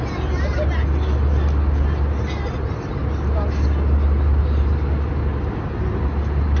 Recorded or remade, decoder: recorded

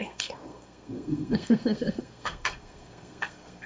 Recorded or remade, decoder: remade, codec, SNAC